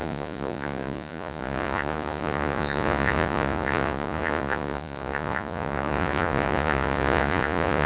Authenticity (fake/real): fake